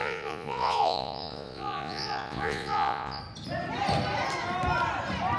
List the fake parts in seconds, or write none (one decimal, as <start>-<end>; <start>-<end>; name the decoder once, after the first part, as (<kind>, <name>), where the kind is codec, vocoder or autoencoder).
0.0-3.2 (vocoder, Vocos)